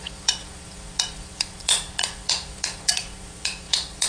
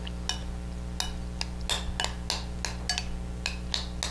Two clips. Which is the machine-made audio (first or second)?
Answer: first